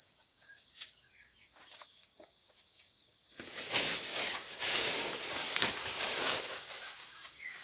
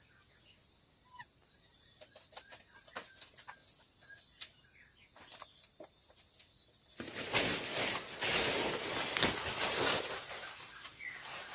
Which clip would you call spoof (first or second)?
first